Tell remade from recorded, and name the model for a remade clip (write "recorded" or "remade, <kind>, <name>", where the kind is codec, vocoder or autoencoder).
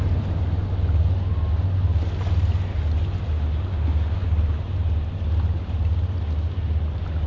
recorded